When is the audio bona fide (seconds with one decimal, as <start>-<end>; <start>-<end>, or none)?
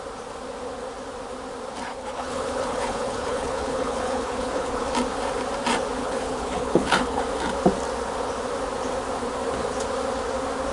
0.0-1.9; 4.9-6.0; 7.2-10.7